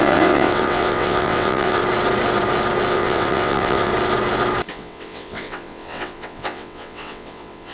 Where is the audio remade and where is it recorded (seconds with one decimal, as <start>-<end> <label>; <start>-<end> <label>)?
0.0-1.8 remade; 1.8-2.9 recorded; 2.9-3.9 remade; 3.9-4.7 recorded; 4.7-7.7 remade